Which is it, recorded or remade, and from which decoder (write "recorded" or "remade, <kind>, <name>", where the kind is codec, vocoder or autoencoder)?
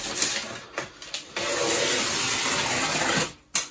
recorded